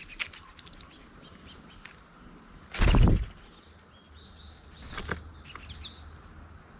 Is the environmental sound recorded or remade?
recorded